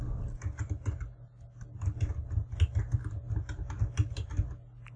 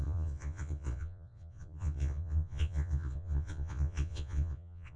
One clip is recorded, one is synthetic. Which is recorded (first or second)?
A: first